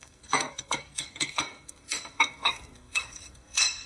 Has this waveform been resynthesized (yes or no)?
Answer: yes